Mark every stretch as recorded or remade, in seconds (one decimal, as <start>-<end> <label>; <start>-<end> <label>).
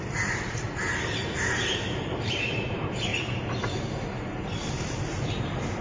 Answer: 0.0-3.1 remade; 3.1-4.4 recorded; 4.4-5.8 remade